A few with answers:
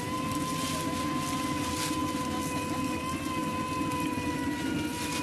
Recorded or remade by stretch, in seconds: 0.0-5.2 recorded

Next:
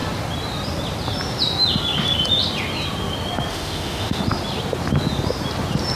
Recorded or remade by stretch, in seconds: 0.0-3.5 recorded; 3.5-4.2 remade; 4.2-6.0 recorded

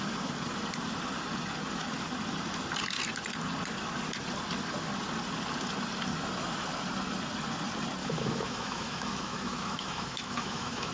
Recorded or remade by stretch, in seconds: 0.0-8.0 recorded; 8.0-10.9 remade

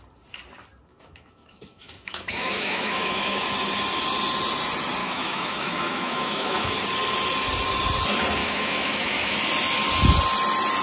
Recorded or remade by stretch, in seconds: 0.0-0.9 recorded; 0.9-3.5 remade; 3.5-5.0 recorded; 5.0-6.7 remade; 6.7-8.4 recorded; 8.4-9.4 remade; 9.4-10.8 recorded

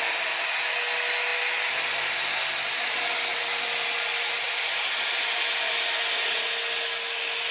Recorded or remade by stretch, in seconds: 0.0-7.5 recorded

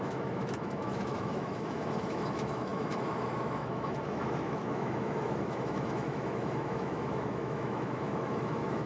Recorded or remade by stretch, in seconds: 0.0-8.9 remade